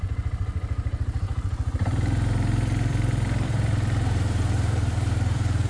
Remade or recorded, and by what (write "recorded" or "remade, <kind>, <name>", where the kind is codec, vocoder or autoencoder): remade, vocoder, BigVGAN v2